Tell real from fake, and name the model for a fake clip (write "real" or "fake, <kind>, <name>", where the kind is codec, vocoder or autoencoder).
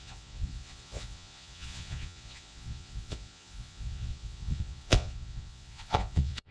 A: fake, vocoder, Vocos